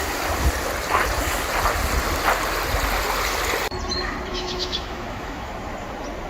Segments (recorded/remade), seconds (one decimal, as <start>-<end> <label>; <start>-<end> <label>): 0.0-4.3 recorded; 4.3-5.5 remade; 5.5-6.3 recorded